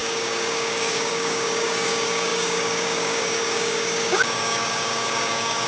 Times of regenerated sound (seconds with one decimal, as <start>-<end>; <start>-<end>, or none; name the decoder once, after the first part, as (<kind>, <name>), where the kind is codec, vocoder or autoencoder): 0.0-5.7 (codec, DAC)